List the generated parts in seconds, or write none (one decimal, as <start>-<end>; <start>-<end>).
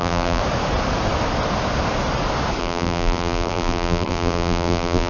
0.0-0.4; 2.6-5.1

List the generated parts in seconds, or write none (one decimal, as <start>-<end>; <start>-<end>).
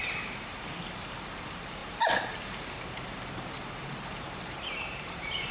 0.0-5.5